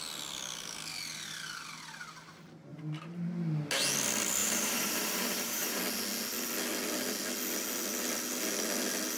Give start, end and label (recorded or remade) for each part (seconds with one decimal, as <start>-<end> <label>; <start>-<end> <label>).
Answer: 0.0-2.7 recorded; 2.7-3.3 remade; 3.3-4.4 recorded; 4.4-5.8 remade; 5.8-9.2 recorded